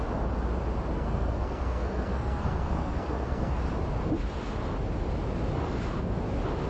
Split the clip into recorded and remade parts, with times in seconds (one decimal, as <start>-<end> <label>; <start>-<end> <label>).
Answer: 0.0-0.9 recorded; 0.9-3.6 remade; 3.6-6.7 recorded